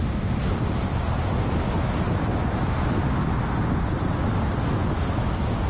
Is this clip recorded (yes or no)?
yes